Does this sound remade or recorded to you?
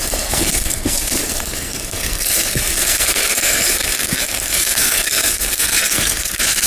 remade